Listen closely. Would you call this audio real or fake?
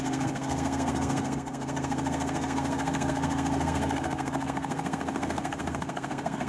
fake